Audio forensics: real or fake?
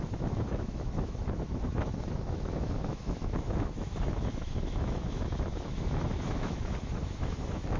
fake